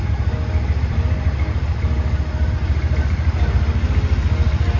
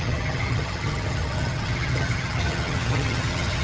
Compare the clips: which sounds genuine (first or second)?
first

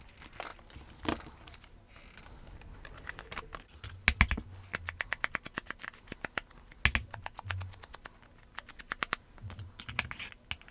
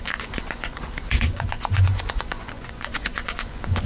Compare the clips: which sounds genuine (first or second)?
first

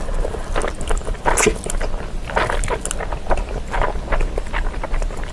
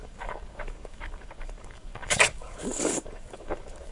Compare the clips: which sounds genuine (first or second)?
first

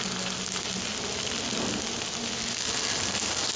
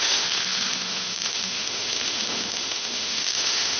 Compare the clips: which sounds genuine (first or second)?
first